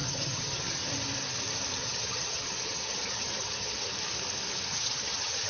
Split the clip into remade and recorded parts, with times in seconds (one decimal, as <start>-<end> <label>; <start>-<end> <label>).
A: 0.0-0.9 remade; 0.9-1.8 recorded; 1.8-3.9 remade; 3.9-4.7 recorded; 4.7-5.5 remade